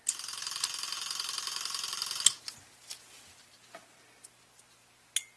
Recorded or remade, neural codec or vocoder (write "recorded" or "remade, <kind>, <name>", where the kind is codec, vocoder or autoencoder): recorded